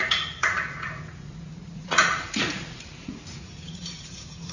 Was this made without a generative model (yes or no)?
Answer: no